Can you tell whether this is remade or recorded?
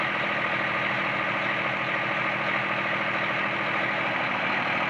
recorded